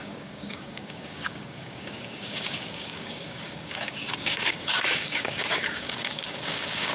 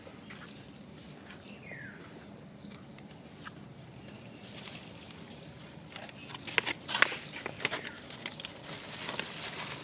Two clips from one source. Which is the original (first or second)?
second